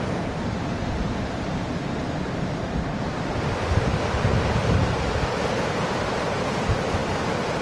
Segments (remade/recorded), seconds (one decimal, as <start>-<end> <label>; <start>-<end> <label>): 0.0-7.6 remade